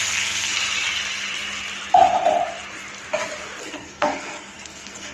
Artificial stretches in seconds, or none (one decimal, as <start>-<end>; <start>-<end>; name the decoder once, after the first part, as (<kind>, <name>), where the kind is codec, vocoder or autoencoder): 0.0-0.5 (codec, SNAC); 3.6-5.1